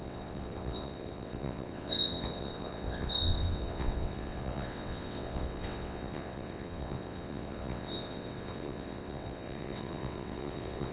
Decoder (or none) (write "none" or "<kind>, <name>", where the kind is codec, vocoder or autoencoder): vocoder, WaveNeXt